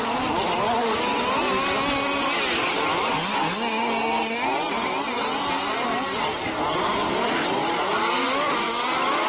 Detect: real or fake real